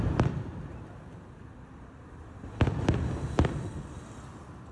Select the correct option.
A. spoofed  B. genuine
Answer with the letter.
B